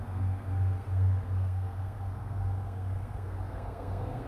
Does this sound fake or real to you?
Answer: fake